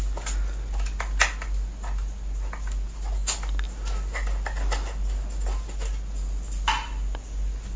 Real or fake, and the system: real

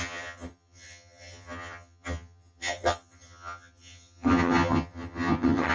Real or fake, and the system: fake, vocoder, HiFi-GAN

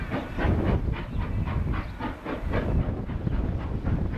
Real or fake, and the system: real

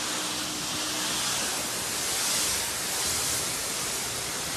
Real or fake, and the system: real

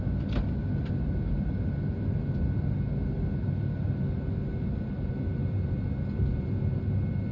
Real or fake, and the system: real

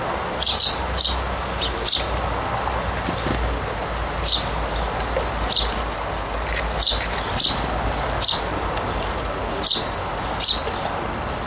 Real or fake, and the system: real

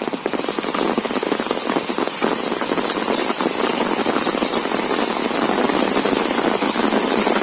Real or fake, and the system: real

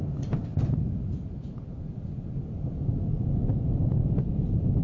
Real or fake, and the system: real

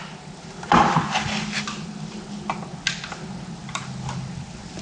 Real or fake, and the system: real